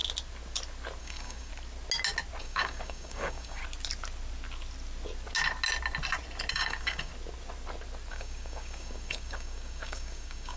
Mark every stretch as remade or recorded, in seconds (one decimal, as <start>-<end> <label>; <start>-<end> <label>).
0.0-1.0 recorded; 1.0-1.5 remade; 1.5-2.4 recorded; 2.4-3.6 remade; 3.6-6.5 recorded; 6.5-7.1 remade; 7.1-8.1 recorded; 8.1-10.6 remade